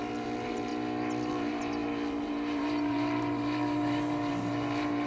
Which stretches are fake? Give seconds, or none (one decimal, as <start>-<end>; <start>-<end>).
0.0-0.7; 1.3-5.1